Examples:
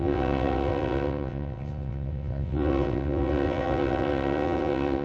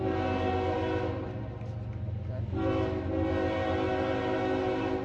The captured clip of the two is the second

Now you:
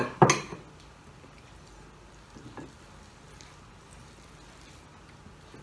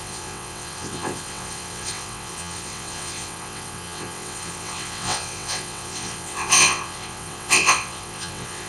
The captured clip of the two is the first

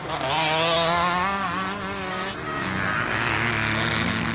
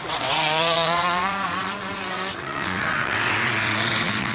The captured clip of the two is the first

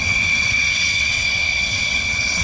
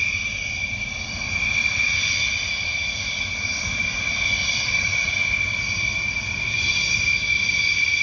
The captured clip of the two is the second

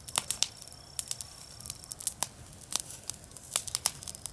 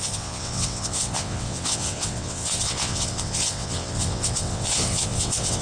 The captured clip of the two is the first